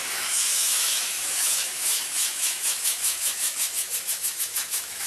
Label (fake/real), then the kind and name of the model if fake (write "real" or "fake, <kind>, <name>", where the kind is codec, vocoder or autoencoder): fake, autoencoder, DAC-VAE